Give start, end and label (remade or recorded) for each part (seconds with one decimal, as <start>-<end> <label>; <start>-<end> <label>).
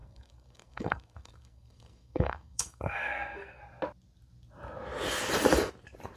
0.0-3.6 remade; 3.6-6.2 recorded